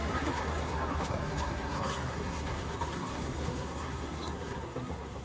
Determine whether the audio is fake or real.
fake